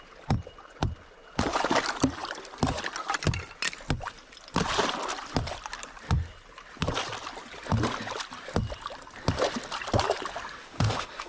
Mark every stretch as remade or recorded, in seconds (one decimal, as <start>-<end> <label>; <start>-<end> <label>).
0.0-10.6 recorded; 10.6-11.3 remade